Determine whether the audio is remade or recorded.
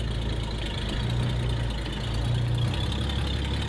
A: recorded